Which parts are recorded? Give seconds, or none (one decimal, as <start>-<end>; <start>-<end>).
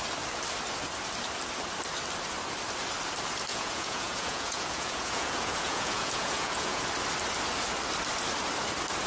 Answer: 0.0-3.5; 6.8-9.1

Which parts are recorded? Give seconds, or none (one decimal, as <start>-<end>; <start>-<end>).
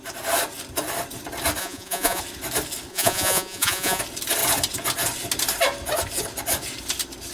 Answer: 0.0-1.6; 2.2-2.9; 4.0-7.3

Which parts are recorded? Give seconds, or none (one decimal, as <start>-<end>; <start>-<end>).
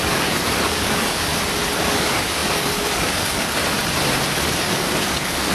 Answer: 1.3-1.8; 3.6-4.6